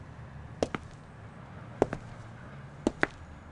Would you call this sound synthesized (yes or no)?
no